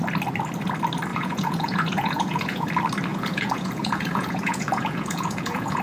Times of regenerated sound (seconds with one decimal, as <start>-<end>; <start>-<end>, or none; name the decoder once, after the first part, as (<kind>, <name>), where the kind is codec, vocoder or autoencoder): 1.1-2.7 (vocoder, Vocos); 3.1-5.8